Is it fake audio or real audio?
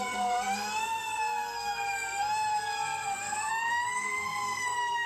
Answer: fake